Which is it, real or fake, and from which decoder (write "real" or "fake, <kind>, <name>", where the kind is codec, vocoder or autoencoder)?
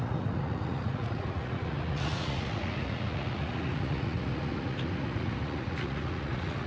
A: fake, vocoder, Vocos